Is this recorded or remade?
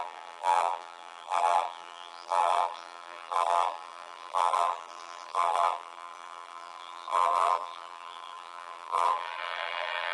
remade